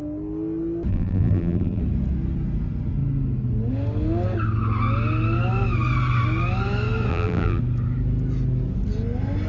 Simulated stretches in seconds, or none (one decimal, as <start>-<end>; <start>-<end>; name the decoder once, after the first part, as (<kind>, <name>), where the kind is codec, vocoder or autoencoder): 0.9-1.8 (vocoder, BigVGAN v2); 7.1-7.6